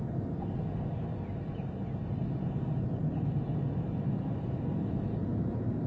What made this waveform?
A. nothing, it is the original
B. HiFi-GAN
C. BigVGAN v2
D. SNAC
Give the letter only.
A